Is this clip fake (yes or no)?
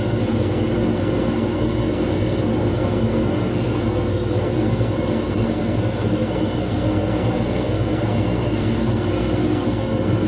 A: yes